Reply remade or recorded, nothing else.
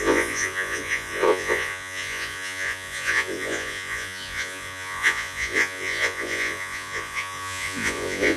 remade